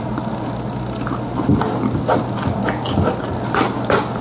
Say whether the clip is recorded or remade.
recorded